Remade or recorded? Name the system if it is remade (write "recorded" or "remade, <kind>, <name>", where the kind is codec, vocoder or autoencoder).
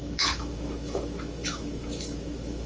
remade, autoencoder, DAC-VAE